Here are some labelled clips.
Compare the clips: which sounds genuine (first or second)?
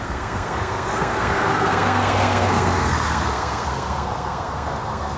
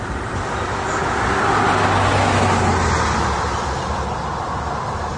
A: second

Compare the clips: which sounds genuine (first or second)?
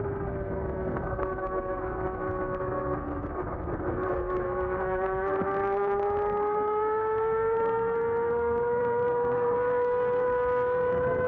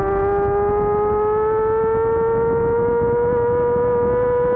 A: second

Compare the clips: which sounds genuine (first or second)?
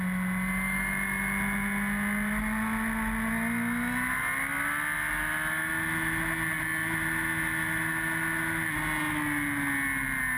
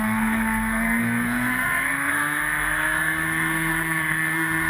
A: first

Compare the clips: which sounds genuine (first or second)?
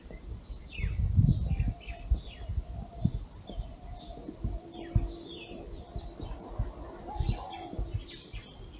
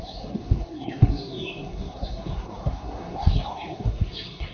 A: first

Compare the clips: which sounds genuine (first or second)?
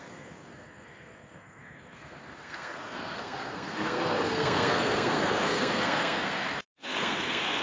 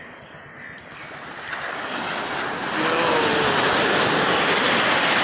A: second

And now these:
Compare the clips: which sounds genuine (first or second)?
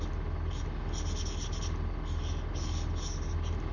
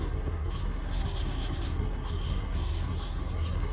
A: first